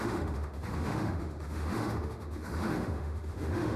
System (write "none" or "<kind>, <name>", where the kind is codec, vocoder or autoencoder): autoencoder, DAC-VAE